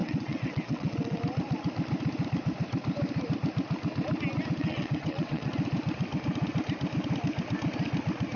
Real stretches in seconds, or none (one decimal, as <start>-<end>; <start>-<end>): 1.2-4.6; 5.5-8.4